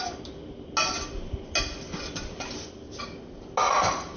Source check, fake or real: real